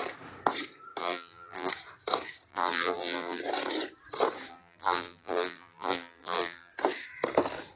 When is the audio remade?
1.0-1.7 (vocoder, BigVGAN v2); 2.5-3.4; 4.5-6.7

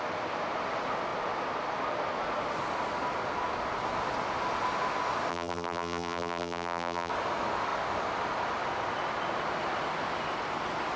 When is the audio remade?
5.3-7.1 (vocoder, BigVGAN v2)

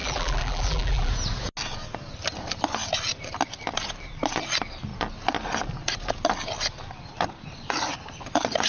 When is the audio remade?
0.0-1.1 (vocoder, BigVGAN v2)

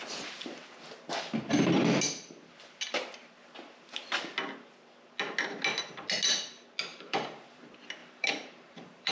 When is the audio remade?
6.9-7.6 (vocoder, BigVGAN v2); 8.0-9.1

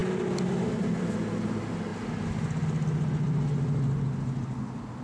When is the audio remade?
none

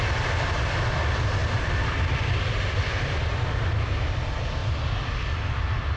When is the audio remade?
1.4-2.8 (vocoder, BigVGAN v2)